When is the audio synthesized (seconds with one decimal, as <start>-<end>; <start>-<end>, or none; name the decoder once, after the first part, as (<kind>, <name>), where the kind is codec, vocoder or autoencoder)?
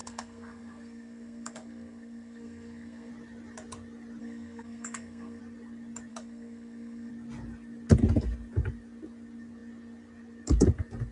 0.0-3.1 (codec, SNAC); 4.2-5.4; 6.1-7.1